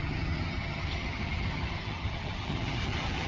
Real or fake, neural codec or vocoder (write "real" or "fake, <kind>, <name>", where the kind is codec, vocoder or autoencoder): fake, vocoder, HiFi-GAN